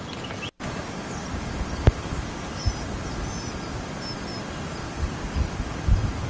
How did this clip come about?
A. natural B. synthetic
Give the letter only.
A